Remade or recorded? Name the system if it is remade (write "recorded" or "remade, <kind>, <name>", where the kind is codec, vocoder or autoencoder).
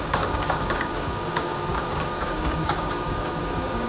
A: remade, codec, DAC